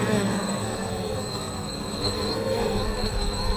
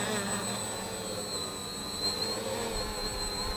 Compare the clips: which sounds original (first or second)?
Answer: second